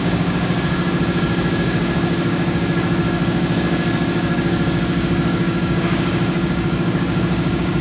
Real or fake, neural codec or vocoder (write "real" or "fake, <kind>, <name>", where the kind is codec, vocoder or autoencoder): fake, codec, DAC